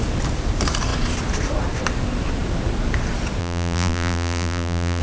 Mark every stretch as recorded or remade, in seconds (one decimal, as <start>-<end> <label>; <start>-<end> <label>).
0.0-3.4 recorded; 3.4-5.0 remade